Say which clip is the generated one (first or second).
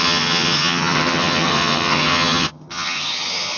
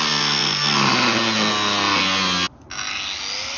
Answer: first